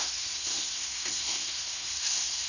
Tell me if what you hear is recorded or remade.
remade